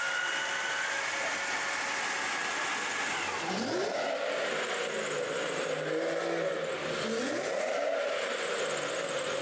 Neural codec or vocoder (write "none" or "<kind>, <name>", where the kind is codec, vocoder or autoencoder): none